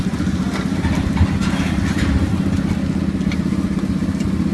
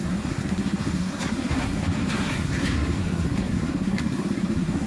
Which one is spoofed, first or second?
second